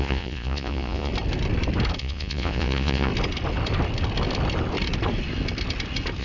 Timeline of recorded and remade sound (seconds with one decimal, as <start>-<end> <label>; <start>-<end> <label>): 0.0-1.1 remade; 1.1-2.0 recorded; 2.0-3.1 remade; 3.1-6.2 recorded